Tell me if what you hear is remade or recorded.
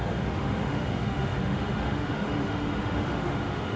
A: remade